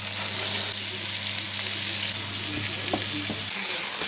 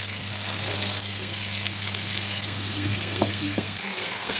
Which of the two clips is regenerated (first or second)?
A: second